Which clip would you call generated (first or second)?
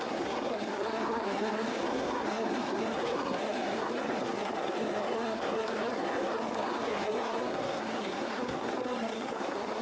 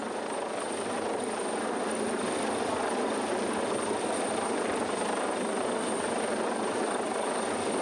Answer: first